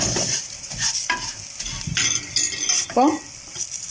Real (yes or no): yes